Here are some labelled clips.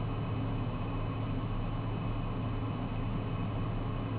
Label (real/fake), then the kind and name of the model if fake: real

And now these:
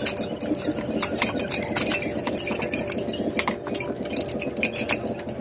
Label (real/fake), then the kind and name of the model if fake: real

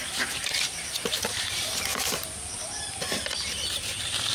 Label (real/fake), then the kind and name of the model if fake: fake, vocoder, BigVGAN v2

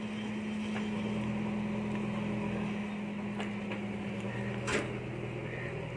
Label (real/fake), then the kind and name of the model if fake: real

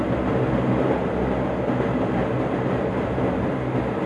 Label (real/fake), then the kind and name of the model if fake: real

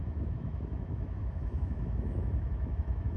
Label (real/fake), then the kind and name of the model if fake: fake, autoencoder, DAC-VAE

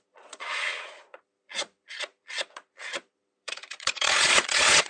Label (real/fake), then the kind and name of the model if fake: fake, vocoder, Vocos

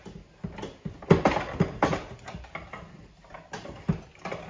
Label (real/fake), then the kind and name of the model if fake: real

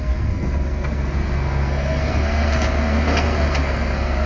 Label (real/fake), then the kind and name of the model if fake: fake, codec, SNAC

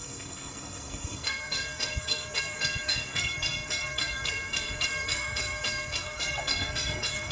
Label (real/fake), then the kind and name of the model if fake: fake, codec, SNAC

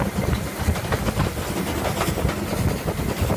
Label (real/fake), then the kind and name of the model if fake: real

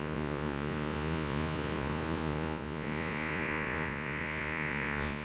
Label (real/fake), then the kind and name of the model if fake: fake, vocoder, Vocos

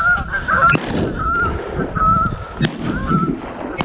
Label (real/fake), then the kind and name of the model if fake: real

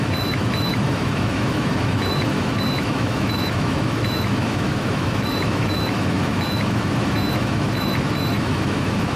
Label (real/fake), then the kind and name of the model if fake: fake, autoencoder, DAC-VAE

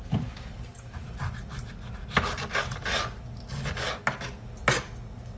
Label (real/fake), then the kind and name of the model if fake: real